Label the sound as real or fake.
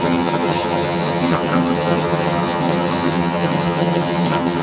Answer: fake